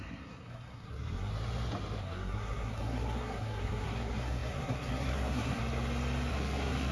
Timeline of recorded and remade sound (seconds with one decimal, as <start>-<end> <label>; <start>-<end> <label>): 0.0-1.3 remade; 1.3-2.0 recorded; 2.0-5.6 remade; 5.6-6.3 recorded; 6.3-6.9 remade